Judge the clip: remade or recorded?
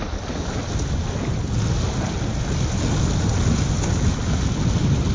recorded